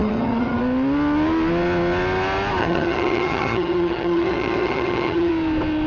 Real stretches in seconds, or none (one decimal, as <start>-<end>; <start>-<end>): 0.6-2.6; 5.3-5.9